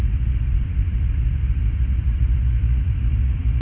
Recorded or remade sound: remade